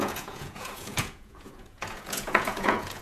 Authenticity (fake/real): fake